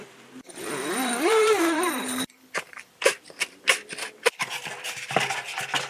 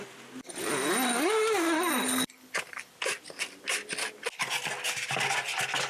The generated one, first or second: first